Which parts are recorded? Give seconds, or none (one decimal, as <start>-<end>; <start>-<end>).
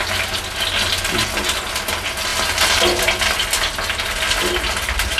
0.0-5.2